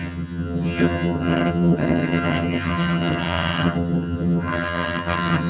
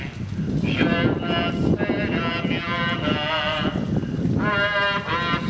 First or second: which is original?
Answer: second